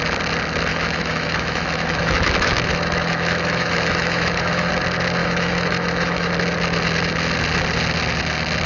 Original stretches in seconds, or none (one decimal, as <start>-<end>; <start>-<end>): 0.0-0.7; 4.7-5.2; 6.3-8.7